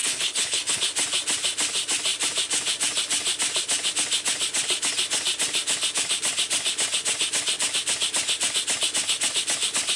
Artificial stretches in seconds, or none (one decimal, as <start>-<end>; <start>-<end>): 0.0-0.8